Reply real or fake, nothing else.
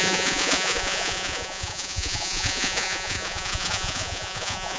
fake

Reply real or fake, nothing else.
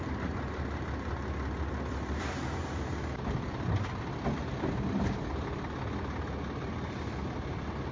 real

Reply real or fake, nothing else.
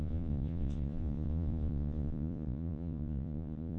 fake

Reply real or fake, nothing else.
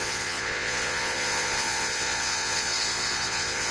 fake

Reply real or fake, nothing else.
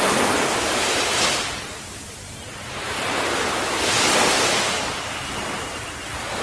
real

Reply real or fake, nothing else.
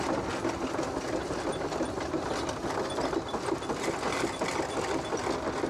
real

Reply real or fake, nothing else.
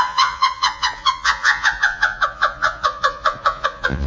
fake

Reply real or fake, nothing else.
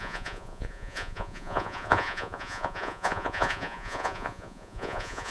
fake